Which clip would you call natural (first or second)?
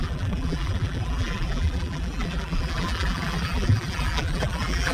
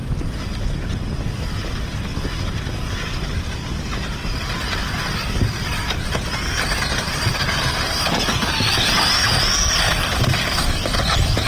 second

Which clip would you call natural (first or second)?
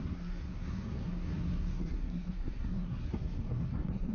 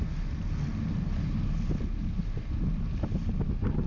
second